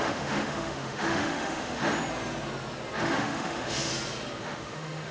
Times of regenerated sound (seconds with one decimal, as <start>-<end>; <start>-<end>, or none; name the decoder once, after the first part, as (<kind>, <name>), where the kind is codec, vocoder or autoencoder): 0.0-1.8 (autoencoder, DAC-VAE); 3.0-3.9; 4.4-5.1